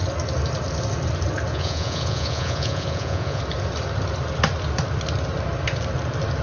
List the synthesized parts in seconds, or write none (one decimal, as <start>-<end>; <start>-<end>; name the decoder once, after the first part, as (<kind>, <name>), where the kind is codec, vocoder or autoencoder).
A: 1.5-3.4 (vocoder, Vocos)